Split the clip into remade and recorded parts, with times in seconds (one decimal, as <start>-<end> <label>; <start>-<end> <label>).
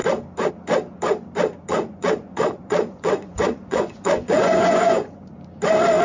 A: 0.0-1.7 recorded; 1.7-5.3 remade; 5.3-6.0 recorded